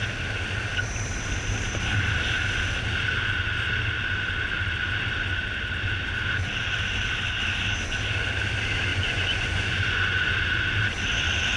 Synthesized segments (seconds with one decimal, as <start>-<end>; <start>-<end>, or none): 8.9-10.3